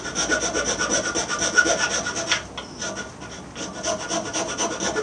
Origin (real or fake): real